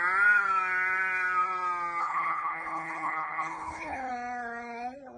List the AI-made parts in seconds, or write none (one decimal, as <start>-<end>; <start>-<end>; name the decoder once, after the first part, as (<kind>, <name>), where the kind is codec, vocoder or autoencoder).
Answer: 2.0-4.1 (codec, HILCodec)